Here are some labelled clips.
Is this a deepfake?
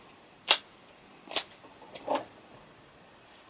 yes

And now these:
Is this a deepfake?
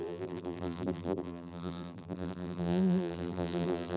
yes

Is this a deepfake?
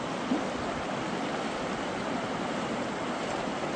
no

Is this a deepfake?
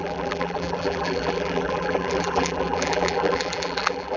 yes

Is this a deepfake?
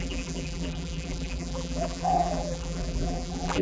yes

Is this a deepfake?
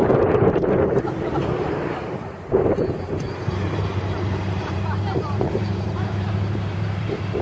yes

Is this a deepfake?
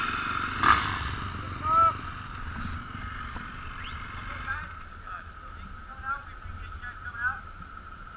no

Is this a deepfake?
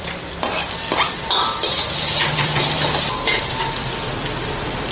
yes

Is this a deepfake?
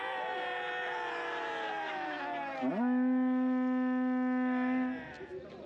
no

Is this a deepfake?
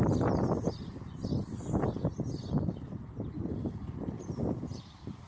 no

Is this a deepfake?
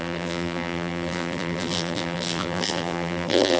yes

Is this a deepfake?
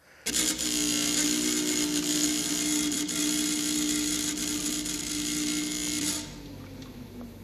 no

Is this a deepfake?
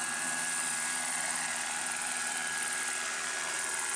yes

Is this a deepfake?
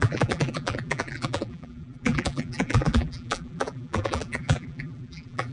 yes